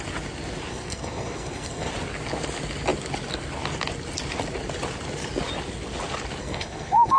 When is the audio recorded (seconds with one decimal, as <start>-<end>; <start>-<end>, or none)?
0.0-0.7; 1.9-6.4